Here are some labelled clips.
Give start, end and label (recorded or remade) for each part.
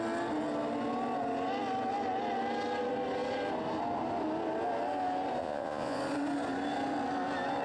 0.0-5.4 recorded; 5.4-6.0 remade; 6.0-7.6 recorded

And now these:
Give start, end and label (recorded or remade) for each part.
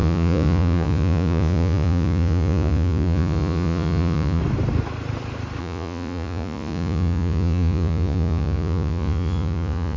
0.0-4.4 remade; 4.4-5.6 recorded; 5.6-10.0 remade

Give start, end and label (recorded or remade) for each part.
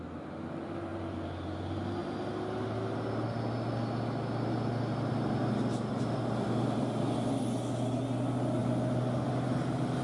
0.0-10.0 recorded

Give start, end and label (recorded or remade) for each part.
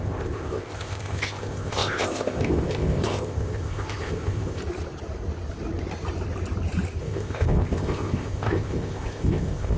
0.0-4.6 remade; 4.6-7.0 recorded; 7.0-9.8 remade